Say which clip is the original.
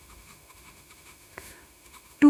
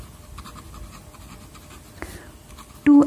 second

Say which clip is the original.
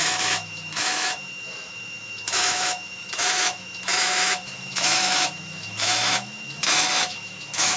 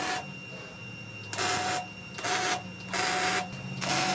second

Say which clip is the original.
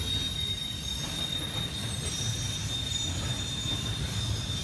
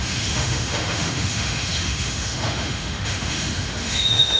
first